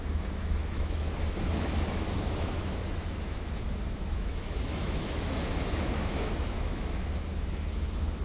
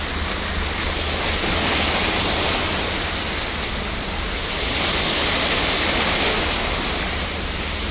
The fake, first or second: first